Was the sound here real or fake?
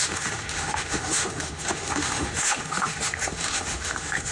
fake